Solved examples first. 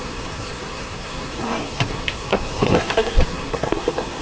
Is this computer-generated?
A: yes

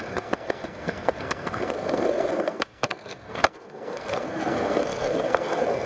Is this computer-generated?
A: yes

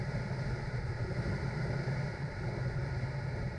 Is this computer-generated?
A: no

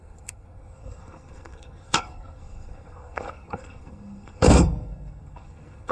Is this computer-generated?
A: yes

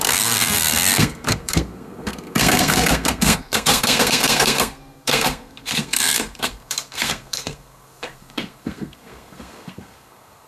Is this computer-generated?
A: yes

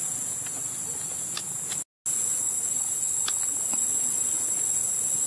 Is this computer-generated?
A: no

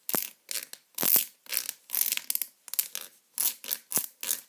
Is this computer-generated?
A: no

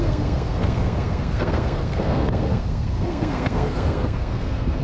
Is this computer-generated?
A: yes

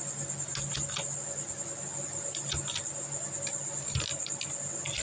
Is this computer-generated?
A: no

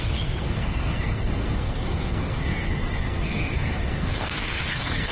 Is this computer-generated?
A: yes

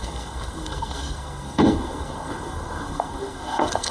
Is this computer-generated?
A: yes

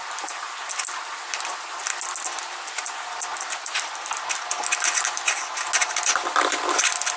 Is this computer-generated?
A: no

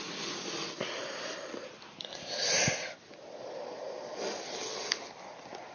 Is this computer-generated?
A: no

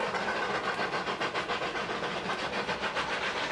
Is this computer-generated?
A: no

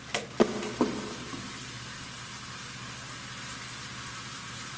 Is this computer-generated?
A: no